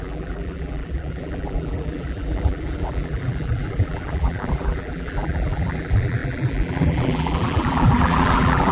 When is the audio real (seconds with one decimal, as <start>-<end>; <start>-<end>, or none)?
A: none